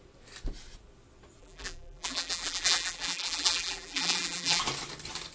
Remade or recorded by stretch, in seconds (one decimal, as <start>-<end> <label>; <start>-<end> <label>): 0.0-1.4 recorded; 1.4-4.6 remade; 4.6-5.3 recorded